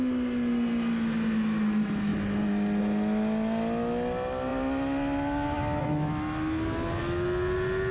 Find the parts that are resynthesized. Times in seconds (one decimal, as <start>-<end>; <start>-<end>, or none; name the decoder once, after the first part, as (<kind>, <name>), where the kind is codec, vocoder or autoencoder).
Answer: none